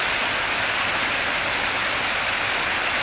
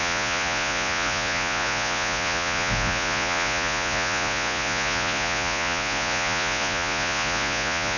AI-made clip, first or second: second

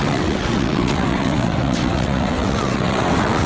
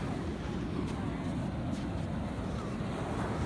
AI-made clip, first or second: first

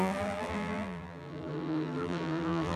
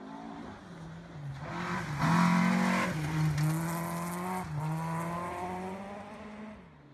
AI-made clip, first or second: first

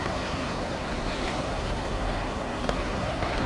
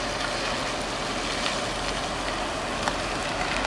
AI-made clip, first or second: first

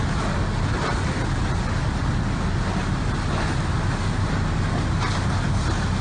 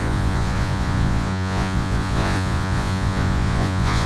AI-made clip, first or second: second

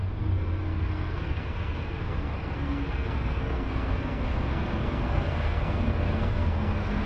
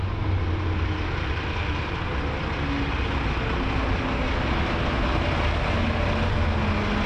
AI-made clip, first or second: first